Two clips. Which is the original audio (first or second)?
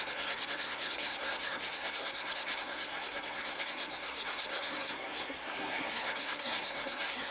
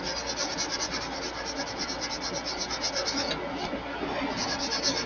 second